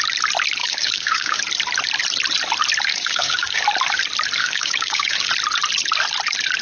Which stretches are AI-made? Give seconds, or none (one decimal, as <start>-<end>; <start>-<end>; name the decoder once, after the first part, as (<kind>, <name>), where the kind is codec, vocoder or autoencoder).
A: 0.6-1.4 (codec, DAC); 2.9-3.6; 4.4-5.3